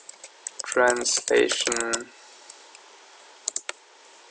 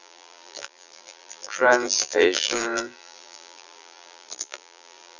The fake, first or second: second